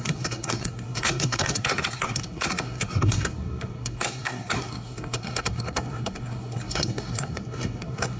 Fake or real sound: fake